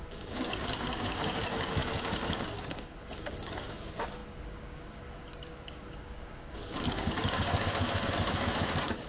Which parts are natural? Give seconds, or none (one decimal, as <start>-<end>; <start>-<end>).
none